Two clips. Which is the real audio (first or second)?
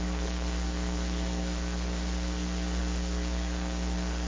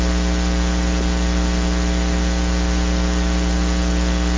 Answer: second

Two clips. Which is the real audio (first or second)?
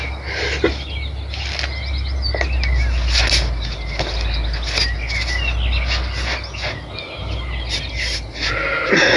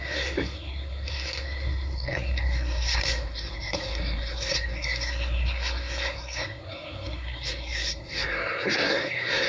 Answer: first